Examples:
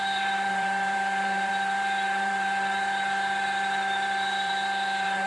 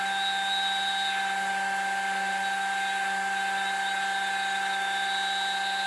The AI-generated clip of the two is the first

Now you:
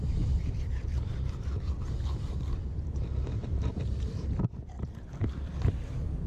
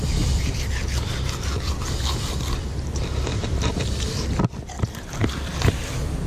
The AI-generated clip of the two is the first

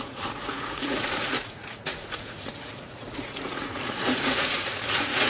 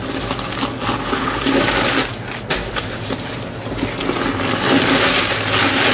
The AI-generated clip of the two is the first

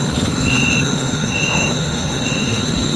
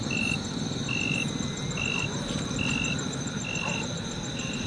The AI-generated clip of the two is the first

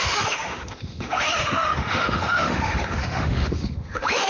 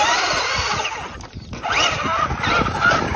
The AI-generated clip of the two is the first